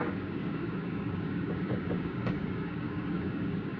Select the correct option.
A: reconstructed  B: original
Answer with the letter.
A